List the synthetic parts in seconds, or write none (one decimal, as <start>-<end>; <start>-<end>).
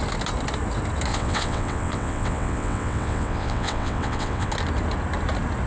1.1-4.5